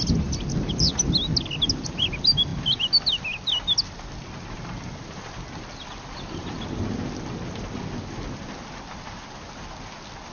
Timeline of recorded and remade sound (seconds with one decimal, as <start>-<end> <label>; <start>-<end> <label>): 0.0-10.3 recorded